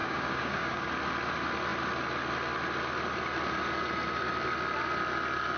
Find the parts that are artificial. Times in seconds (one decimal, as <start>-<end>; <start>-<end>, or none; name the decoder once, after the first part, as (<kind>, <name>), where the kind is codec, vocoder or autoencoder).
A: 0.0-0.9 (codec, DAC)